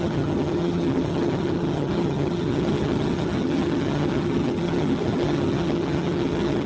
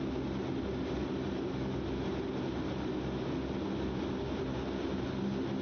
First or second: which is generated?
first